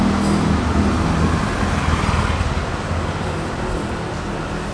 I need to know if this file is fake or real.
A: real